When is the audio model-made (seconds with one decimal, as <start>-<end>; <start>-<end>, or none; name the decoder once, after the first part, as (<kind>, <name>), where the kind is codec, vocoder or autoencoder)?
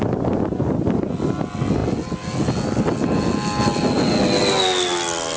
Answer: none